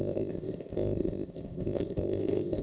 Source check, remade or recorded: remade